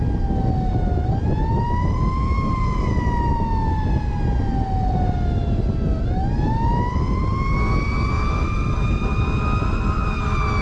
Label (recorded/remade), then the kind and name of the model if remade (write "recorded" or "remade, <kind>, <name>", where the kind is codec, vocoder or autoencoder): recorded